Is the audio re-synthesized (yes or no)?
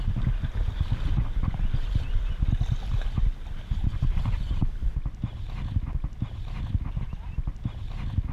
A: no